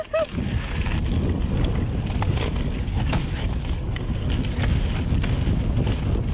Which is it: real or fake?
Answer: real